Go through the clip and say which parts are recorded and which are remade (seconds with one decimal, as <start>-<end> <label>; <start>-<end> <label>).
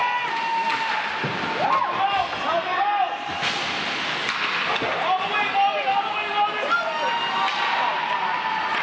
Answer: 0.0-8.8 recorded